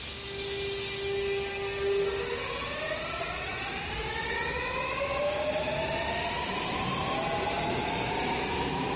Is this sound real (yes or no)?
yes